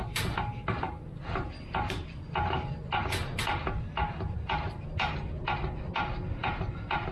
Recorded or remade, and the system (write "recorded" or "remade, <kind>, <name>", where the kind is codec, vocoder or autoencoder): recorded